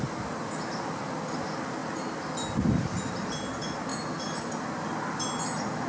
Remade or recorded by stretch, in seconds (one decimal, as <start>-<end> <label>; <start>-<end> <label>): 0.0-5.9 recorded